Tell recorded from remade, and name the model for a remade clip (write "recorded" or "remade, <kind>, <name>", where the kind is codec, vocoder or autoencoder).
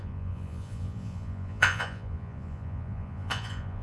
remade, vocoder, Vocos